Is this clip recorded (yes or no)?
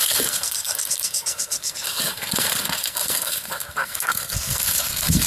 no